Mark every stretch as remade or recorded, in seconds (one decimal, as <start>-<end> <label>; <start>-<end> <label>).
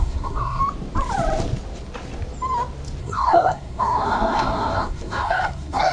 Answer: 0.0-0.6 remade; 0.6-3.0 recorded; 3.0-5.9 remade